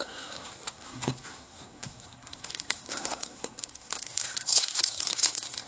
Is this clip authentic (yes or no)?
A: no